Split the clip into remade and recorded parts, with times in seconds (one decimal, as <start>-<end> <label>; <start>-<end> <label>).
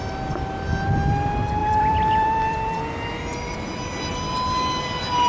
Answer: 0.0-1.6 recorded; 1.6-2.8 remade; 2.8-5.3 recorded